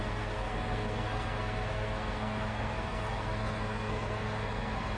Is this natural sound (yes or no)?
no